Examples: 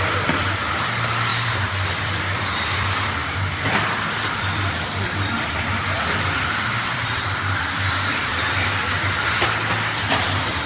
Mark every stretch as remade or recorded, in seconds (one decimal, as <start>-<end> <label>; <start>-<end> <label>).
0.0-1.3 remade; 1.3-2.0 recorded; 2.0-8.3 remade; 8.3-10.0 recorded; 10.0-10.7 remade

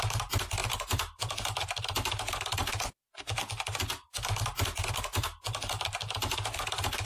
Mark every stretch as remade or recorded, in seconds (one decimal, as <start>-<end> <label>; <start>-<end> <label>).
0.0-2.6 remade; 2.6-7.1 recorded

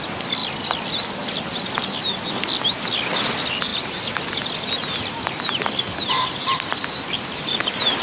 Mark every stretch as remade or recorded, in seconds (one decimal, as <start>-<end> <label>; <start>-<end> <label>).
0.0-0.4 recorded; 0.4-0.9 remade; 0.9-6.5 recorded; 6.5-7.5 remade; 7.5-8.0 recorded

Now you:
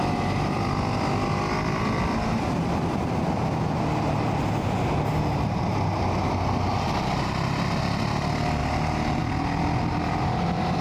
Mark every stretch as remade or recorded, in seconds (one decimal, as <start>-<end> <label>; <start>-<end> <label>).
0.0-8.6 recorded; 8.6-9.2 remade; 9.2-10.8 recorded

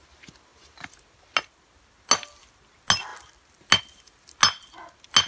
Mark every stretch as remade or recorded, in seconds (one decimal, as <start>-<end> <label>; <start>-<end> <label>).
0.0-5.3 recorded